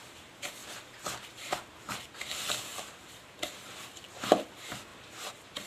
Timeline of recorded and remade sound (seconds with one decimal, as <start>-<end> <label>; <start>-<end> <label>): 0.0-0.6 recorded; 0.6-1.9 remade; 1.9-2.7 recorded; 2.7-3.8 remade; 3.8-4.9 recorded; 4.9-5.7 remade